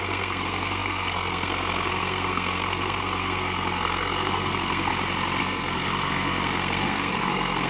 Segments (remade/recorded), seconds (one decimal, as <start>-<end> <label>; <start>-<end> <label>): 0.0-4.9 remade; 4.9-5.4 recorded; 5.4-7.7 remade